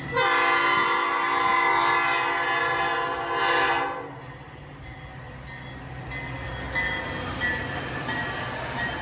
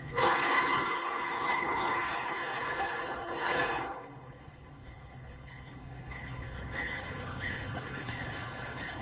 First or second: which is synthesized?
second